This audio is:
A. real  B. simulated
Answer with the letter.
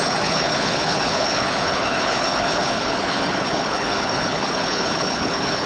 B